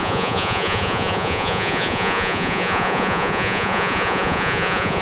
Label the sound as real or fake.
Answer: fake